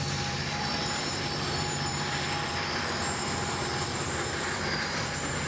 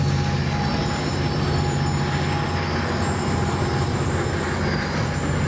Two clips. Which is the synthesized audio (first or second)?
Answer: first